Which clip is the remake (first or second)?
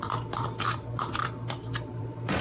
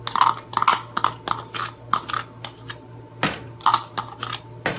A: first